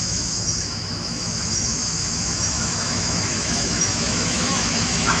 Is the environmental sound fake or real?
fake